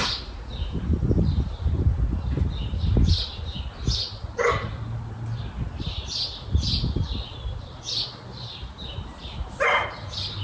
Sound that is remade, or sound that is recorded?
recorded